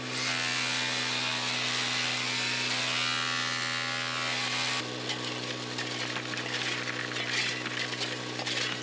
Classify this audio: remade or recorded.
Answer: recorded